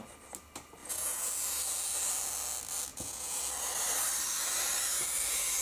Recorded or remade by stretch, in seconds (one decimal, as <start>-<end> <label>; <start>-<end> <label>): 0.0-0.8 recorded; 0.8-1.3 remade; 1.3-2.9 recorded; 2.9-3.4 remade; 3.4-5.6 recorded